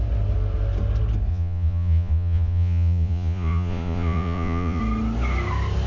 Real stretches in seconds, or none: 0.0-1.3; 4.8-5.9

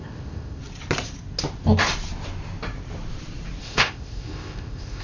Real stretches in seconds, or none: 0.6-3.6

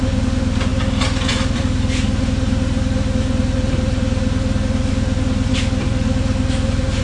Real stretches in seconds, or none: 0.0-0.7; 4.9-5.5